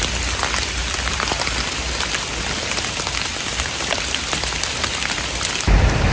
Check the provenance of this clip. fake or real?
real